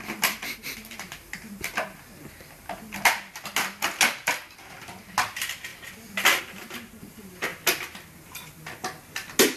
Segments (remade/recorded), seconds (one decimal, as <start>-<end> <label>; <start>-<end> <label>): 0.0-9.6 recorded